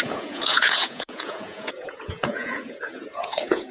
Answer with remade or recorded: remade